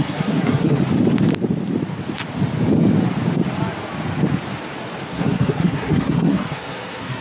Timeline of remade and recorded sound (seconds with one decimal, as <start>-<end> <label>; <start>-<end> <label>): 0.0-0.8 remade; 0.8-5.1 recorded; 5.1-7.2 remade